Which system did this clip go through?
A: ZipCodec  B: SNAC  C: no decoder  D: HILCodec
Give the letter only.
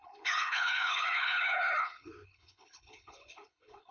D